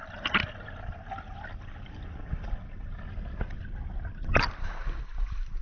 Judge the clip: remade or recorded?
recorded